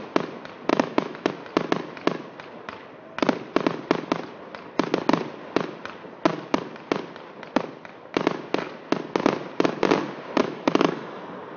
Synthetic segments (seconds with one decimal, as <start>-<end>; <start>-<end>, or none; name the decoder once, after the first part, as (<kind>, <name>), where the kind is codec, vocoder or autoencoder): 0.7-1.3 (autoencoder, DAC-VAE); 10.4-11.2